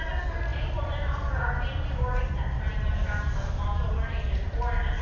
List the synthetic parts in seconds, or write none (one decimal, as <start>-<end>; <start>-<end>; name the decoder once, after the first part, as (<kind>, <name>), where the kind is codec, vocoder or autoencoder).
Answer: none